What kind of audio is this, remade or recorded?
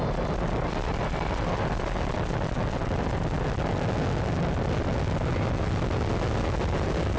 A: recorded